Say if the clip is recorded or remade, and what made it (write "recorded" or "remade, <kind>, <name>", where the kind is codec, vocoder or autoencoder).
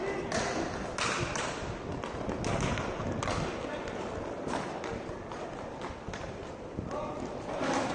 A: recorded